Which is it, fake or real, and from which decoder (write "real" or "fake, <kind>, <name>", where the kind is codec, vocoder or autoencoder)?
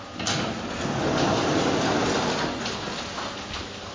real